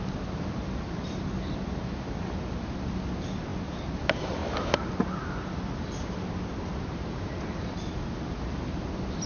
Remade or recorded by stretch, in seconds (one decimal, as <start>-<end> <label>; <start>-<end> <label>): 0.0-9.3 recorded

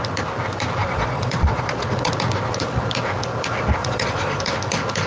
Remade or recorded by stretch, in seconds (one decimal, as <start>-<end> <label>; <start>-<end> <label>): 0.0-0.8 recorded; 0.8-2.1 remade; 2.1-3.8 recorded; 3.8-4.4 remade; 4.4-5.1 recorded

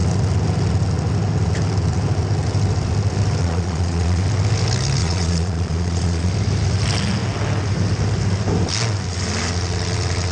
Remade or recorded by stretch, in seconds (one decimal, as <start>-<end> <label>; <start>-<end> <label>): 0.0-3.4 recorded; 3.4-4.2 remade; 4.2-5.0 recorded; 5.0-6.3 remade; 6.3-10.3 recorded